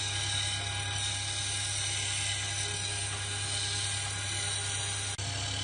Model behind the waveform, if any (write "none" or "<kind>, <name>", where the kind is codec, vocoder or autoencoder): none